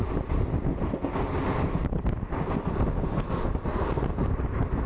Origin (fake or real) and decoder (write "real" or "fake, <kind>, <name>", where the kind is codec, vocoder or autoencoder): real